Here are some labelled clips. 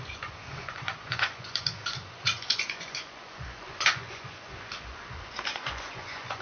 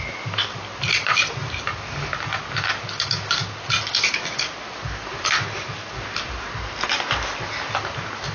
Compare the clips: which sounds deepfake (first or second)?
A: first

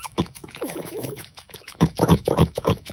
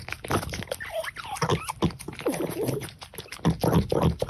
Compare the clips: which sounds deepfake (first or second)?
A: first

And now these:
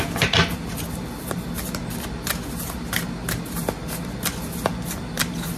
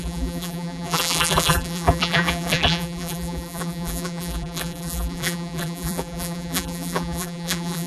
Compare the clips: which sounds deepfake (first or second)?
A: second